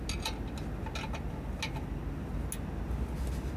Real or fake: real